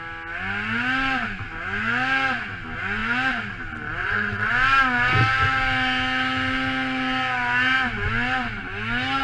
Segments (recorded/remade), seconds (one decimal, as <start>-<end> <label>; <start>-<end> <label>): 0.0-4.0 recorded; 4.0-4.5 remade; 4.5-9.2 recorded